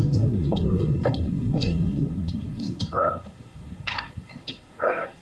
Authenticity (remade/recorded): remade